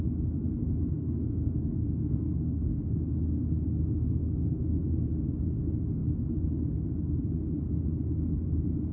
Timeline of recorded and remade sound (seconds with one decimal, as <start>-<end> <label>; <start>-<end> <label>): 0.0-1.0 recorded; 1.0-2.8 remade; 2.8-4.2 recorded; 4.2-5.1 remade; 5.1-8.9 recorded